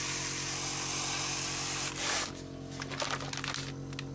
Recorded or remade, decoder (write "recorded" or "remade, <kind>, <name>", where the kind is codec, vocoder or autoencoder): recorded